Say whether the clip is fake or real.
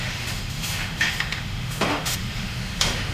fake